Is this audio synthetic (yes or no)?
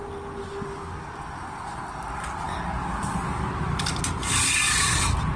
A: no